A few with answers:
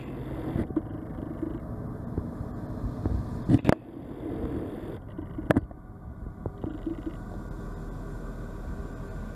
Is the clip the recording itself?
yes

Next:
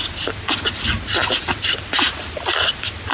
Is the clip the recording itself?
yes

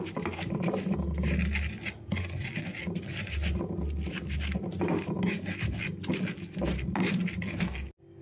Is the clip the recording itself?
yes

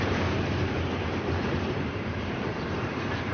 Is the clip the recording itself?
no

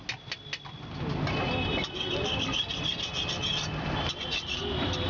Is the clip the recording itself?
yes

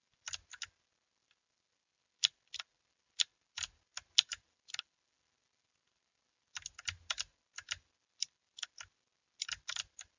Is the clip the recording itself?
yes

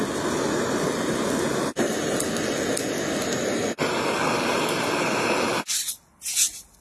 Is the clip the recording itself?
yes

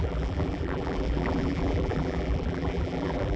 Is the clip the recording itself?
no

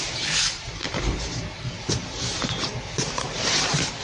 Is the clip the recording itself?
no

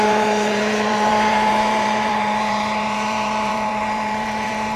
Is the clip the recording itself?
no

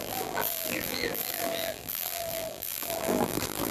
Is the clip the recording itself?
no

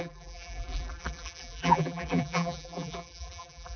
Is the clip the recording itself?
no